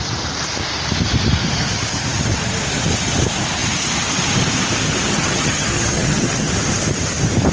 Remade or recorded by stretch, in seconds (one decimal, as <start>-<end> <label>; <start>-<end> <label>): 0.0-5.1 recorded; 5.1-6.5 remade; 6.5-7.5 recorded